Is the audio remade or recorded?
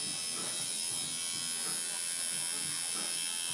recorded